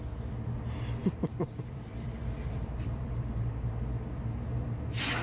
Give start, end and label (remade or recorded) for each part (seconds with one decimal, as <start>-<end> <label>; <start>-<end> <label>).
0.0-1.0 recorded; 1.0-3.5 remade; 3.5-5.2 recorded